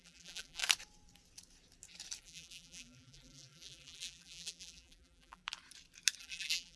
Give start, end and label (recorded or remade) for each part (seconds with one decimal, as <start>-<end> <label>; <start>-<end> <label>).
0.0-0.6 remade; 0.6-2.2 recorded; 2.2-5.4 remade; 5.4-6.2 recorded; 6.2-6.8 remade